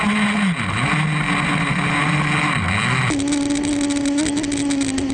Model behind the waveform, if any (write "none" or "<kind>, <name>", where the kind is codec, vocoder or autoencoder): none